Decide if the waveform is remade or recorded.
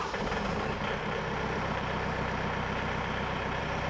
remade